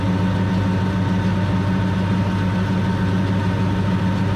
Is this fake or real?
real